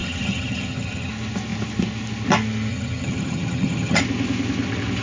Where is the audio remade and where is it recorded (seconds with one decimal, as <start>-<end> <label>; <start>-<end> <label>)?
0.0-1.1 remade; 1.1-2.7 recorded; 2.7-4.0 remade; 4.0-5.0 recorded